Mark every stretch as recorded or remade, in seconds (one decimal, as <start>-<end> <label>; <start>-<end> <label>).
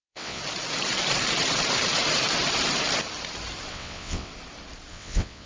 0.0-0.4 remade; 0.4-3.7 recorded; 3.7-4.3 remade; 4.3-4.9 recorded; 4.9-5.5 remade